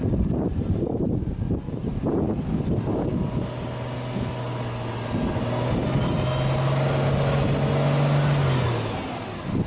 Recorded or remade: recorded